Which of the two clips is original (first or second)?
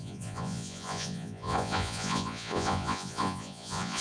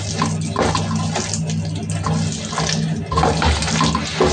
second